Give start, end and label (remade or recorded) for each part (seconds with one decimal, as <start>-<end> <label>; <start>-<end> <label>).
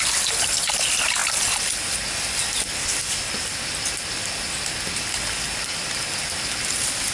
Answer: 0.0-7.1 recorded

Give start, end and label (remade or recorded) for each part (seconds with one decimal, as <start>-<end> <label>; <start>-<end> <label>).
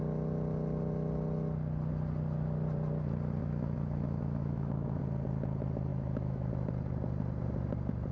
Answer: 0.0-3.4 recorded; 3.4-5.0 remade; 5.0-5.9 recorded; 5.9-6.5 remade; 6.5-8.1 recorded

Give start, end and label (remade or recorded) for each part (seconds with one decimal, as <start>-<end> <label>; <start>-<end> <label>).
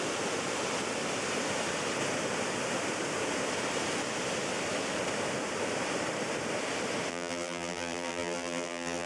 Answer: 0.0-7.1 recorded; 7.1-9.1 remade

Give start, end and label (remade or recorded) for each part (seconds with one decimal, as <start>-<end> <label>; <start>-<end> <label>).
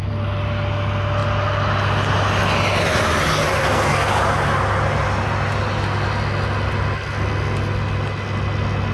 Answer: 0.0-3.6 recorded; 3.6-4.1 remade; 4.1-8.9 recorded